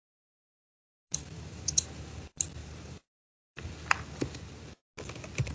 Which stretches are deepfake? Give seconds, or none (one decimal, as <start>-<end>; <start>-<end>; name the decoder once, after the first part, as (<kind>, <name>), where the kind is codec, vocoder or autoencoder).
1.0-2.2 (vocoder, BigVGAN v2); 2.6-3.6